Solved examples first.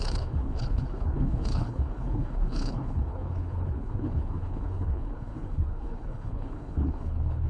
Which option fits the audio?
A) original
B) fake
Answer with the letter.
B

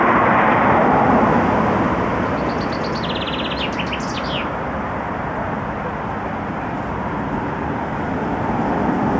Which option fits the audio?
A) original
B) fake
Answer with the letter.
A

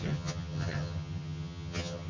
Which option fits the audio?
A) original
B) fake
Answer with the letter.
B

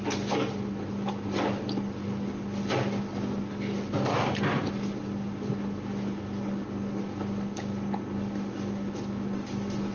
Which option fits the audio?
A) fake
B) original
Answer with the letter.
B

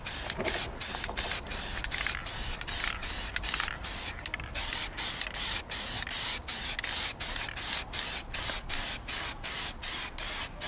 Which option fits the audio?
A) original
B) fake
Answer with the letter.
A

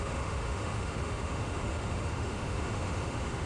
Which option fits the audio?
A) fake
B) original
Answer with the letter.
A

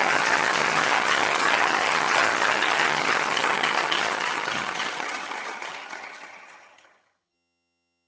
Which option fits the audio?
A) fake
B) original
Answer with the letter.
A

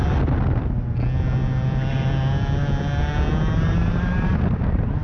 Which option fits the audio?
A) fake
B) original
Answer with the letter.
B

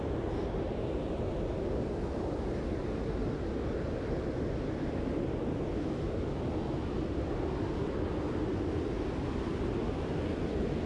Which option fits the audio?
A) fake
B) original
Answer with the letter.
B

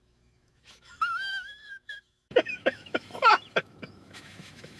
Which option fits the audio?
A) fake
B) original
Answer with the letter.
A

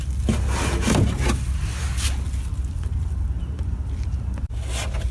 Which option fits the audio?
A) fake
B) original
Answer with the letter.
B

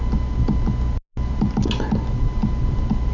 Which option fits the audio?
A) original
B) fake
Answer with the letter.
A